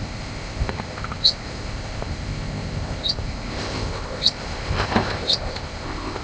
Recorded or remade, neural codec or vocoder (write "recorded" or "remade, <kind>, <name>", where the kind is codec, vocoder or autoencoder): remade, codec, ZipCodec